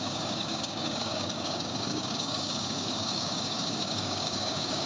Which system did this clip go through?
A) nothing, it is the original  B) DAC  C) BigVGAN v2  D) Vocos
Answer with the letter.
B